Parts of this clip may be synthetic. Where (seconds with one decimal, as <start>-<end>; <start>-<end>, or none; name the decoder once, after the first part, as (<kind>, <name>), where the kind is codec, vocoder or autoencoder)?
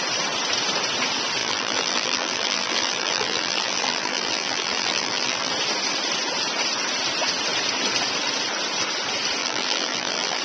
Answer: 1.4-5.5 (vocoder, BigVGAN v2); 9.4-10.4